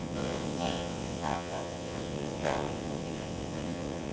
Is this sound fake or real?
fake